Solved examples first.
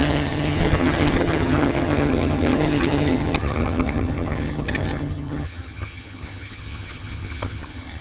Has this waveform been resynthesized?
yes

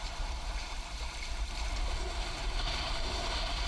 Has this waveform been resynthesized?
yes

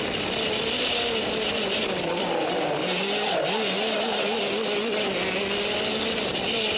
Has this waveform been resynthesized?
no